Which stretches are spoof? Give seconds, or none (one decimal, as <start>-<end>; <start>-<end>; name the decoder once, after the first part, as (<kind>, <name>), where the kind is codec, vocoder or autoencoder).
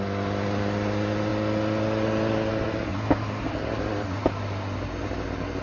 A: none